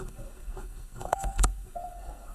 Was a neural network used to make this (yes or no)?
yes